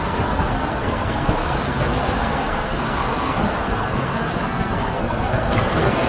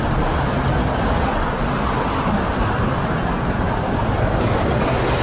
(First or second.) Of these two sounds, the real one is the second